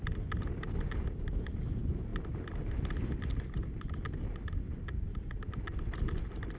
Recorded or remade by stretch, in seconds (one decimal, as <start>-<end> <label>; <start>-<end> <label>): 0.0-6.6 recorded